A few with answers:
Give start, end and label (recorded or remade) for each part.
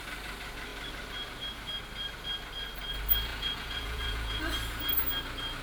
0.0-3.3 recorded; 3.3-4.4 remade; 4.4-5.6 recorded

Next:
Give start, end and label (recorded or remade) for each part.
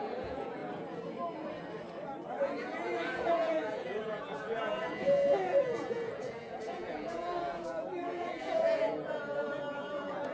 0.0-0.6 remade; 0.6-2.4 recorded; 2.4-10.3 remade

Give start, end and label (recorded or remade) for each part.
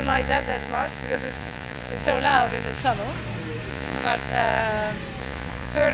0.0-2.8 remade; 2.8-3.7 recorded; 3.7-4.6 remade; 4.6-5.2 recorded; 5.2-5.9 remade